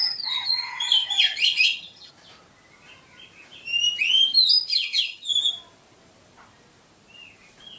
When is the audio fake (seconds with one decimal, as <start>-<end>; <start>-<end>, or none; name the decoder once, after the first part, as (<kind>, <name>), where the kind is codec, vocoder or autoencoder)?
0.0-2.1 (vocoder, HiFi-GAN); 4.7-5.3